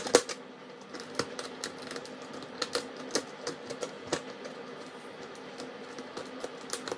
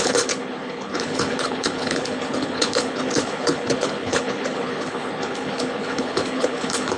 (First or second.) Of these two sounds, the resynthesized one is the second